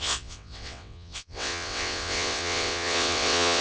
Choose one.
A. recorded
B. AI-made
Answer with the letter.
B